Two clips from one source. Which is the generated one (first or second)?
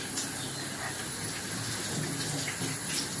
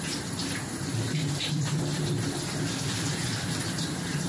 second